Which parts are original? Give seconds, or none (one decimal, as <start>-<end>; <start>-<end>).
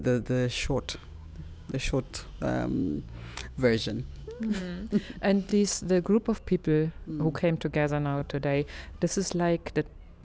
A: 0.0-1.0; 1.7-3.4; 4.6-5.5; 6.9-8.2; 8.9-10.2